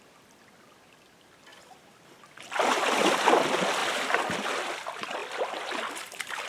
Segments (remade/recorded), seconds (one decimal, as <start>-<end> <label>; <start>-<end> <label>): 0.0-3.8 remade; 3.8-4.5 recorded; 4.5-6.5 remade